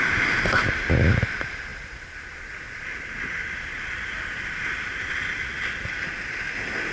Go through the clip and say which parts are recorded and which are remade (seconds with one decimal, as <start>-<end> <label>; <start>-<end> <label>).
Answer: 0.0-6.9 recorded